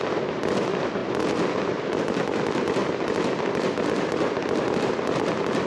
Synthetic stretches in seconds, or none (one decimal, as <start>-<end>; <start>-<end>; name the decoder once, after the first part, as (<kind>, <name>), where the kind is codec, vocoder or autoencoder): none